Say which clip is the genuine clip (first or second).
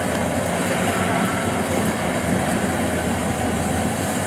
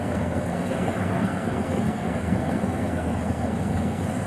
first